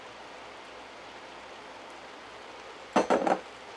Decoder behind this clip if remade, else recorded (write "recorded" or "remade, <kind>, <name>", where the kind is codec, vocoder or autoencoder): recorded